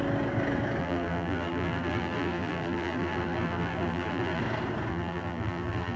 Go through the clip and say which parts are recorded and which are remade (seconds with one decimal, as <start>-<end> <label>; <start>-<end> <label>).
0.0-0.8 recorded; 0.8-4.4 remade; 4.4-4.9 recorded; 4.9-6.0 remade